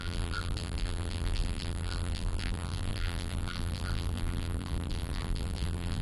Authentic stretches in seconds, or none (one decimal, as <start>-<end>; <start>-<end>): none